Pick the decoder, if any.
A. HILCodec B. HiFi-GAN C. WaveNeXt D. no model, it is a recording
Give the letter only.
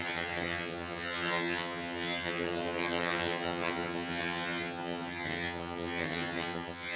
B